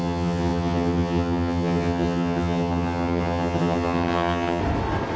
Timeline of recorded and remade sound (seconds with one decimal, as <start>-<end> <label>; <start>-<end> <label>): 0.0-4.6 remade; 4.6-5.2 recorded